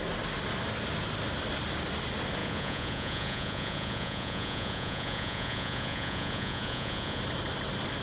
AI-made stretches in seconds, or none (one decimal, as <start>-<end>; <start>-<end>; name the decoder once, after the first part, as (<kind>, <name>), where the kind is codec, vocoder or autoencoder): 2.4-7.2 (vocoder, Vocos)